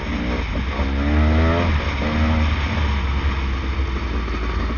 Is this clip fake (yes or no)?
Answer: no